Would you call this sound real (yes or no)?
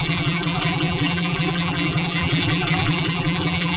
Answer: no